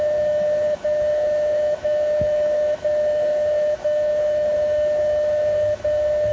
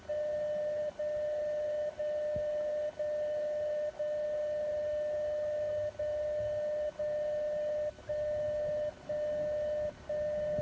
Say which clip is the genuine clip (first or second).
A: second